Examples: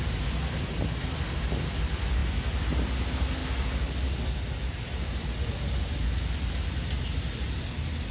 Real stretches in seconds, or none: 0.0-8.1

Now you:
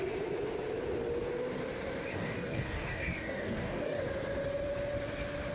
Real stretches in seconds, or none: 0.0-2.1; 4.0-5.5

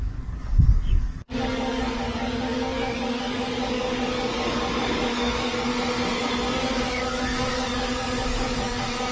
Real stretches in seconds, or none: 5.7-6.9

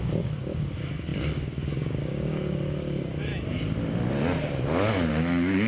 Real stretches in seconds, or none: 3.3-5.1

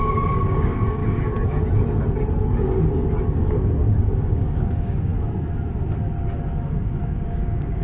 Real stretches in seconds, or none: 1.0-3.8; 5.1-6.6

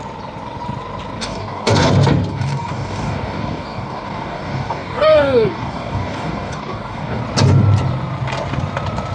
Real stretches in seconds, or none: 0.0-1.2; 1.9-2.3; 7.2-9.1

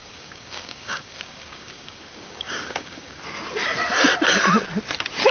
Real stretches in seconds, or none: 3.2-5.3